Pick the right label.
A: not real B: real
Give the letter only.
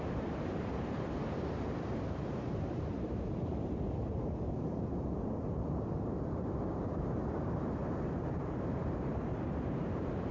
A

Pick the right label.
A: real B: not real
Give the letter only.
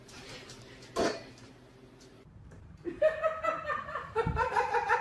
B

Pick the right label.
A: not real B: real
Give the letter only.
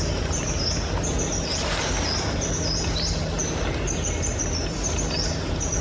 B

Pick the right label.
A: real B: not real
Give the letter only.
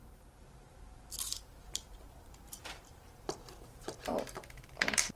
B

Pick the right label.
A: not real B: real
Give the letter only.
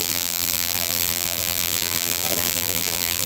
A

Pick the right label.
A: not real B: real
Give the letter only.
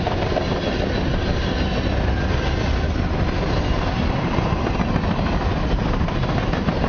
B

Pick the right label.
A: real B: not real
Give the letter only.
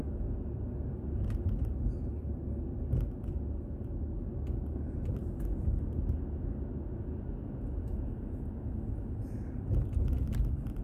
A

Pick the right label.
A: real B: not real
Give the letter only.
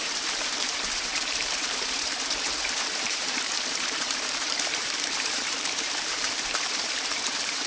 B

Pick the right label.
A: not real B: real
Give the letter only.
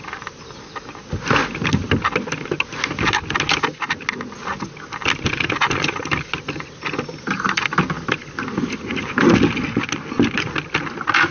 B